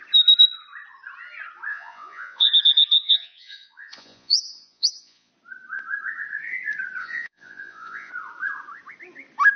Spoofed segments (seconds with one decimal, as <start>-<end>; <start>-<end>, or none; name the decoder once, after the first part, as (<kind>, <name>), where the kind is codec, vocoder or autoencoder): 1.7-2.5 (vocoder, Vocos); 3.0-5.3; 7.0-8.1